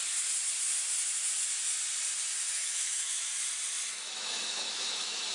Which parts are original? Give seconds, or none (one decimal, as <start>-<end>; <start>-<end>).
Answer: 0.0-2.5; 3.3-3.9

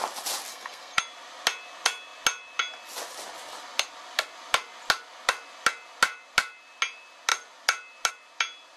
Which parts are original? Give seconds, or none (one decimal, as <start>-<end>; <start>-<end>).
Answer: 0.0-0.5; 1.0-8.8

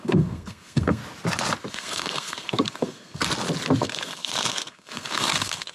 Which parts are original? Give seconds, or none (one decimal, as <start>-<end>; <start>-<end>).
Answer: 1.0-1.7; 3.2-3.8

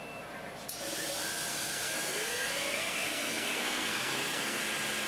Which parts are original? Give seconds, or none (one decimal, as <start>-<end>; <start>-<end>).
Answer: 0.0-1.5; 4.6-5.1

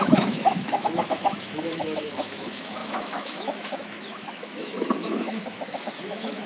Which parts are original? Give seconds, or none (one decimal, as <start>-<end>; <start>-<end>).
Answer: none

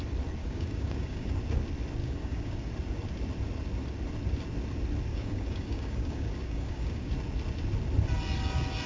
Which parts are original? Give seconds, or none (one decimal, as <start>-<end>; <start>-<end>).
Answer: 0.0-0.4; 1.3-2.0; 2.7-5.1; 7.1-8.9